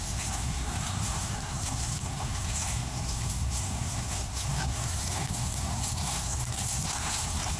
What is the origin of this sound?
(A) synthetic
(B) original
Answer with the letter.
A